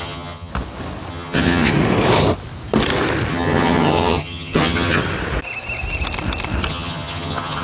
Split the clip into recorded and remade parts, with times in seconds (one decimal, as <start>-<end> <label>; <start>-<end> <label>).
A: 0.0-0.5 remade; 0.5-1.1 recorded; 1.1-1.7 remade; 1.7-3.3 recorded; 3.3-5.0 remade; 5.0-6.7 recorded; 6.7-7.6 remade